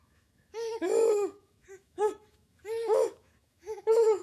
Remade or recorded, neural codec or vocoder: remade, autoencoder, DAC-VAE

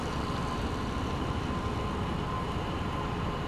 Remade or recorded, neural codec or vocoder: recorded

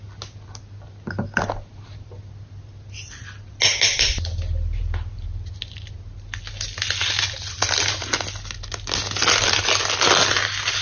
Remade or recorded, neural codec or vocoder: recorded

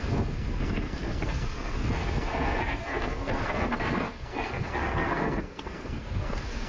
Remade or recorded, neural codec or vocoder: remade, codec, SNAC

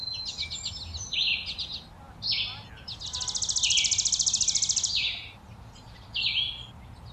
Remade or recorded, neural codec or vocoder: recorded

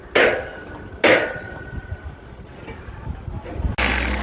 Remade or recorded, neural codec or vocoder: recorded